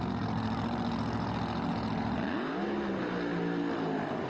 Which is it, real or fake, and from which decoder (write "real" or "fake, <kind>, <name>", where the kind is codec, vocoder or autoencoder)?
real